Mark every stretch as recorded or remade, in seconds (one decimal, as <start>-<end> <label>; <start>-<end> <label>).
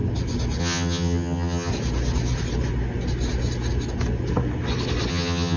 0.0-0.6 recorded; 0.6-1.7 remade; 1.7-5.1 recorded; 5.1-5.6 remade